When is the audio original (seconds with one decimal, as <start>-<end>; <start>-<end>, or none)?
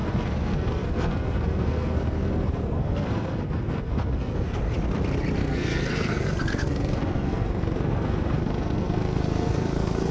4.6-5.4